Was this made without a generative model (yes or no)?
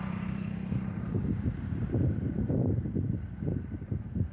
no